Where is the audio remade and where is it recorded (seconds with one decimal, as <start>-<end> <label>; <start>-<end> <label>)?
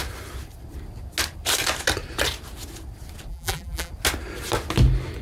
0.0-3.3 recorded; 3.3-3.9 remade; 3.9-5.2 recorded